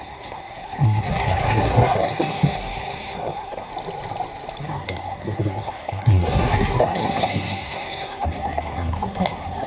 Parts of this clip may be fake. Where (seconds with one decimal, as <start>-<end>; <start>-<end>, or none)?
0.0-3.7; 4.6-9.7